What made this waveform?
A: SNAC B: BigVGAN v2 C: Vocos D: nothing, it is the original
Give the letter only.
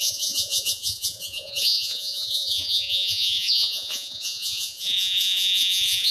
C